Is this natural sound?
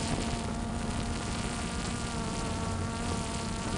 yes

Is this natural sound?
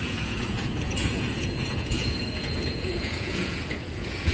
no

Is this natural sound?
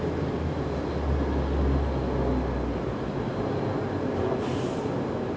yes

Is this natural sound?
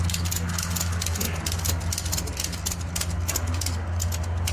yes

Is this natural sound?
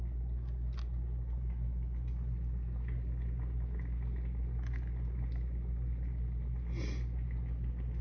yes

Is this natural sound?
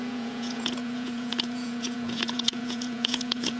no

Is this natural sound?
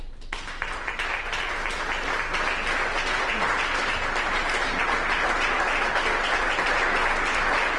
yes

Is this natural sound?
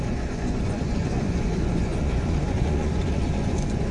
no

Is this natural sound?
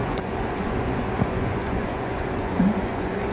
no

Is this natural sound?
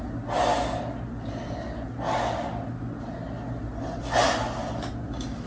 yes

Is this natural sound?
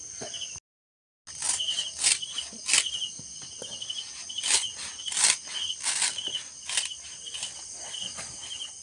yes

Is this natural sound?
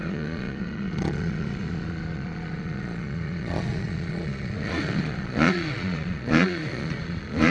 no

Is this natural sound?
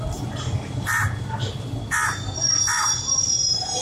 yes